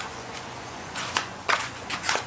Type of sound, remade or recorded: remade